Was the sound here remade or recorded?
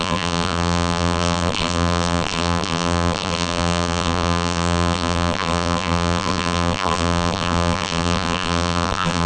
remade